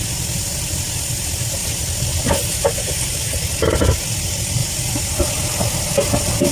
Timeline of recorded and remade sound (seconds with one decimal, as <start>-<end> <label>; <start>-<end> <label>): 0.0-1.6 recorded; 1.6-2.1 remade; 2.1-6.5 recorded